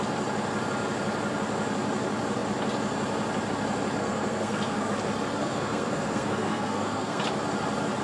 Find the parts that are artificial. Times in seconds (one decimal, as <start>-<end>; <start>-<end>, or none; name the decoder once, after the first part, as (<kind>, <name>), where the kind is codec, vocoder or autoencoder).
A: 4.0-4.9 (codec, SNAC); 5.4-7.2